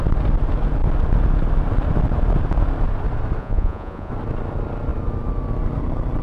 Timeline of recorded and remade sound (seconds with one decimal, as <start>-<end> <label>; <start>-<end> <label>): 0.0-3.4 recorded; 3.4-4.1 remade; 4.1-6.2 recorded